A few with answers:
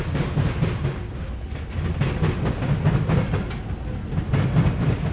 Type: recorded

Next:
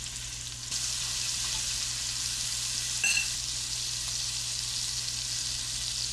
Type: recorded